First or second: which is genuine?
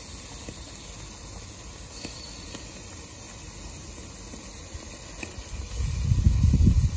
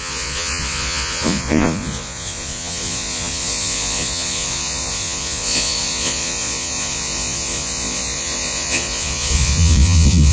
first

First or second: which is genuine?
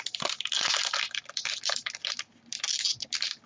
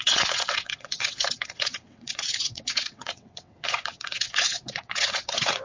first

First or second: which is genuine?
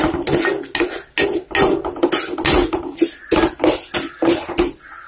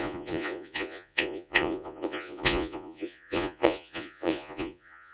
first